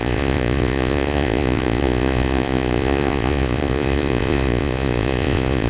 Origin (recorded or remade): remade